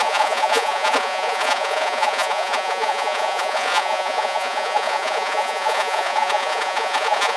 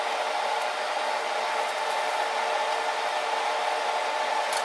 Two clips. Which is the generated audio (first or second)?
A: first